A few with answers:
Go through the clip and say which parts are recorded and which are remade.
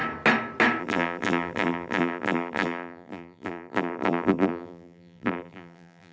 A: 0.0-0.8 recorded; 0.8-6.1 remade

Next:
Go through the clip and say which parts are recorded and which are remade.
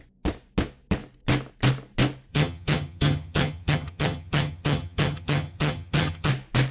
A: 0.0-2.3 recorded; 2.3-6.3 remade; 6.3-6.7 recorded